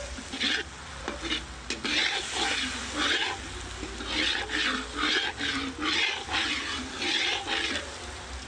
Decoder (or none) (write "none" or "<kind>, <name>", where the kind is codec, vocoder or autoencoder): none